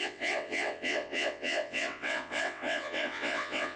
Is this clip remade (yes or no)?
yes